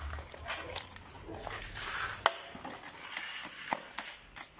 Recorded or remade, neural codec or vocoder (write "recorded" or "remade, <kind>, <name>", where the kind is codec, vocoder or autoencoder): recorded